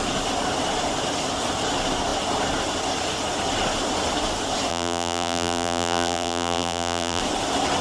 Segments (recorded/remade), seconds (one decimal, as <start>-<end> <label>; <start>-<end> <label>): 0.0-4.7 recorded; 4.7-7.2 remade; 7.2-7.8 recorded